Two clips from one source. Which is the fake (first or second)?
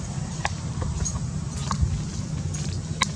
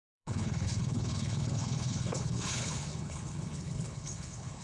second